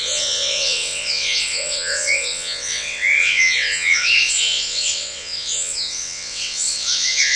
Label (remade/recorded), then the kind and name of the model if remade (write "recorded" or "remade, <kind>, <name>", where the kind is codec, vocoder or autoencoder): remade, vocoder, WaveNeXt